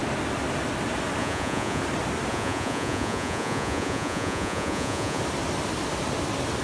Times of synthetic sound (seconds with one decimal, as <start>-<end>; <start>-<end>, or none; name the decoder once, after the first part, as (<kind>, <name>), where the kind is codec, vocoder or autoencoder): 1.2-1.8 (vocoder, Vocos); 2.3-5.2